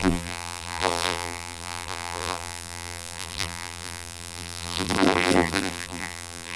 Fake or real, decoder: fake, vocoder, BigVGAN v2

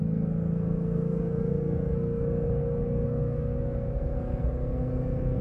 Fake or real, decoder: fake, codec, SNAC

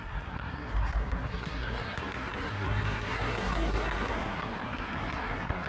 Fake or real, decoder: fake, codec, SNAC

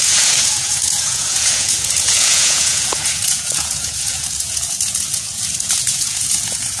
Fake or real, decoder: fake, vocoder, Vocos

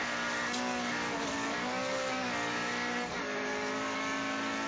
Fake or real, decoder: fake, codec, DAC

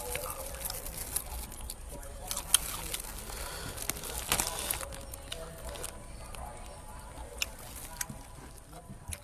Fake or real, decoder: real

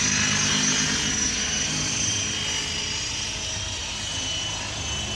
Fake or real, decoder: real